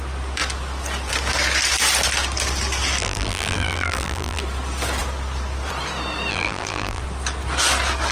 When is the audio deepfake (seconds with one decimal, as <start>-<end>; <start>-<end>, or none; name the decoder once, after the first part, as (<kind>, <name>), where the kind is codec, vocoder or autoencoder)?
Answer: 3.0-4.4 (vocoder, BigVGAN v2); 6.3-7.0